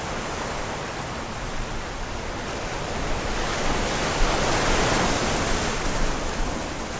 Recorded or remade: recorded